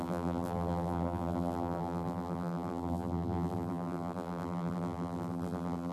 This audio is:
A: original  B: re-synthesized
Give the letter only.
B